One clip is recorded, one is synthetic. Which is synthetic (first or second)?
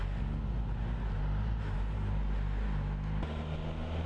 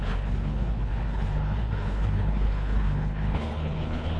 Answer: second